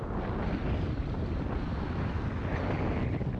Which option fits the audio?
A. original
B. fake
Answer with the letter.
A